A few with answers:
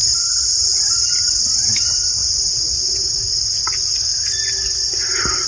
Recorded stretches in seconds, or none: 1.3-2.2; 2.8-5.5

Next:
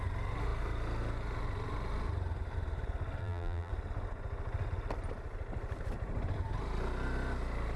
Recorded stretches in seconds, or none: 0.0-3.2; 3.7-7.8